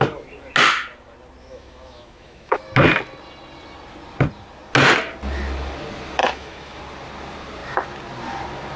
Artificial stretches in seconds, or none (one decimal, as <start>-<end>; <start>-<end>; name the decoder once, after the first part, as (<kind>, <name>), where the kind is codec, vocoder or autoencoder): 1.4-2.6 (autoencoder, DAC-VAE); 6.2-6.8